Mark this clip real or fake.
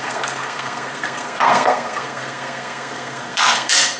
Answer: fake